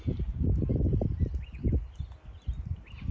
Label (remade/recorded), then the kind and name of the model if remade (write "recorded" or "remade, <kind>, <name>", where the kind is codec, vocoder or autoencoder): recorded